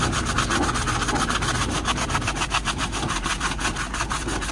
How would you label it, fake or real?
real